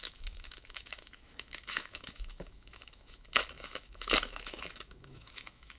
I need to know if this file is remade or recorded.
remade